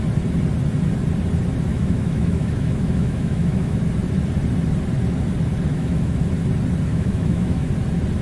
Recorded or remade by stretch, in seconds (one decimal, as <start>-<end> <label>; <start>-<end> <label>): 0.0-1.7 recorded; 1.7-3.8 remade; 3.8-5.7 recorded; 5.7-6.2 remade; 6.2-6.9 recorded; 6.9-7.7 remade; 7.7-8.2 recorded